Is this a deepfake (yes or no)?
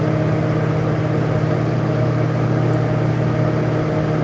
no